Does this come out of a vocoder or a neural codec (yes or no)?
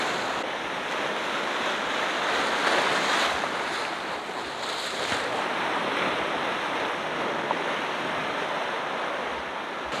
no